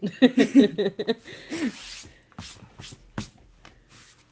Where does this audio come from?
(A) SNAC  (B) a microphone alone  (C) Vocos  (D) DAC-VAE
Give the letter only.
B